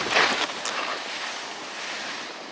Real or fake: real